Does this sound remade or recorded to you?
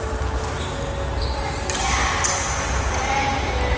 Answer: recorded